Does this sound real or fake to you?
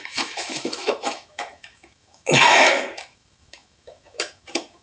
fake